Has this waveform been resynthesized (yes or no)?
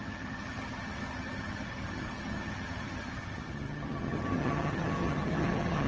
yes